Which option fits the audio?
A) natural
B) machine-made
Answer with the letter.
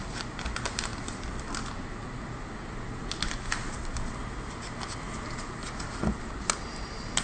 A